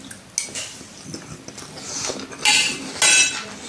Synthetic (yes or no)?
no